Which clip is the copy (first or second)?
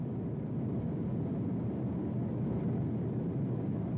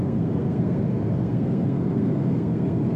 second